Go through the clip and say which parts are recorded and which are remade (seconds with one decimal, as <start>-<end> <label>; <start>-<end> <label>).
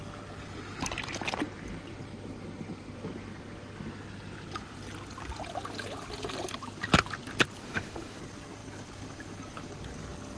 0.0-7.6 recorded; 7.6-8.2 remade; 8.2-10.4 recorded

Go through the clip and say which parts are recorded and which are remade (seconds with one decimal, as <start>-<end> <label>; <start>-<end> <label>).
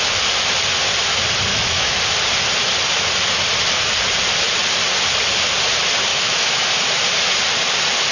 0.0-1.5 recorded; 1.5-2.0 remade; 2.0-6.1 recorded; 6.1-6.7 remade; 6.7-8.1 recorded